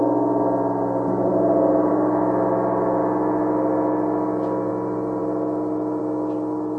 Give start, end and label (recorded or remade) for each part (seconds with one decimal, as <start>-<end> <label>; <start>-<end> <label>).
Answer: 0.0-6.8 recorded